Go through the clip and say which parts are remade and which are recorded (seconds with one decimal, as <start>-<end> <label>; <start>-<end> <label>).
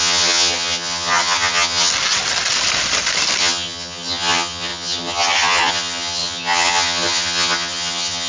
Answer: 0.0-1.9 remade; 1.9-3.4 recorded; 3.4-8.3 remade